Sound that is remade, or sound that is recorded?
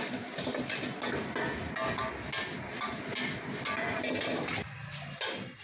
recorded